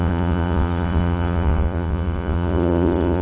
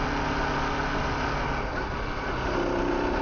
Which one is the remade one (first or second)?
first